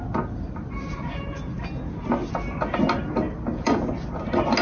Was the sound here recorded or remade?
recorded